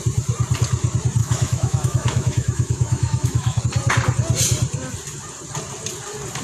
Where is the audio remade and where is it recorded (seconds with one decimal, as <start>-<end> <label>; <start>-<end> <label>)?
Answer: 0.0-1.2 recorded; 1.2-3.6 remade; 3.6-6.4 recorded